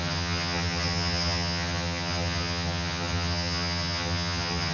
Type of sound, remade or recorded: remade